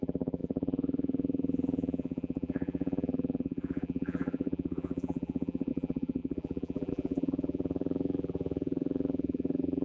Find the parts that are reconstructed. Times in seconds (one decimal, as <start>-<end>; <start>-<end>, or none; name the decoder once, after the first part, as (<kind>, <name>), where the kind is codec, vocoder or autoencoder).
0.0-9.8 (vocoder, BigVGAN v2)

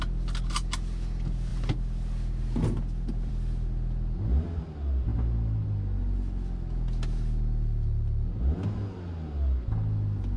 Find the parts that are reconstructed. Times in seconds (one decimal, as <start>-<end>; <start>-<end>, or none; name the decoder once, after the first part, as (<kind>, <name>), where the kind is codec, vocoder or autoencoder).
none

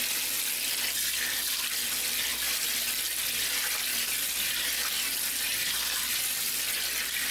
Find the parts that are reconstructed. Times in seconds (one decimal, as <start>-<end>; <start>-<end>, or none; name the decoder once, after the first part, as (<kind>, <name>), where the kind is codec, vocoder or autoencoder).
none

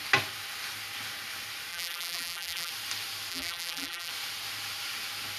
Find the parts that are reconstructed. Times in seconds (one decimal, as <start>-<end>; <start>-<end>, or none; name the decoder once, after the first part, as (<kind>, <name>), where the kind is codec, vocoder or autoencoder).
1.7-2.7 (vocoder, BigVGAN v2); 3.3-4.1